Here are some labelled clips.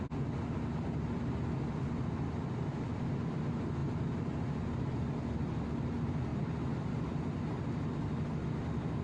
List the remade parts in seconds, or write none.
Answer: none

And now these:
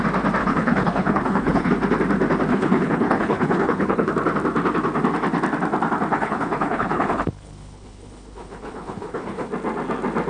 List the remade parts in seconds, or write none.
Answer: 0.4-1.7 (codec, HILCodec); 2.5-4.1; 6.1-9.5

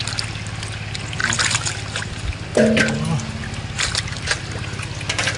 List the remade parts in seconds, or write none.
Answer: none

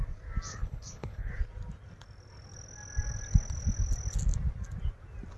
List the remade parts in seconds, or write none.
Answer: 0.5-1.3 (codec, HILCodec)

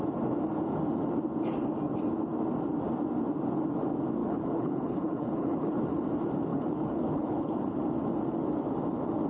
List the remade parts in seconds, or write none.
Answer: 4.2-5.8 (codec, HILCodec); 6.5-7.8

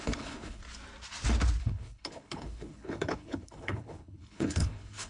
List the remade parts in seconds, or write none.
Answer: 0.0-0.6 (codec, HILCodec); 1.6-5.1

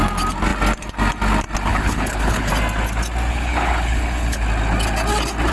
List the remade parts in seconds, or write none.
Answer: 1.7-2.5 (codec, HILCodec); 3.3-4.4

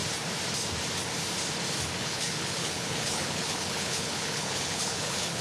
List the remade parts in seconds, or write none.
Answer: 2.0-5.4 (codec, HILCodec)